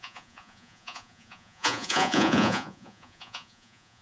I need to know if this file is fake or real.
fake